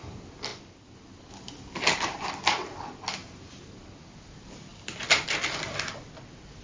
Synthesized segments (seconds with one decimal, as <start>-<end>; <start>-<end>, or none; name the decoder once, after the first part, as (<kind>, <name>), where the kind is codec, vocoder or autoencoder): 3.2-3.7 (vocoder, BigVGAN v2)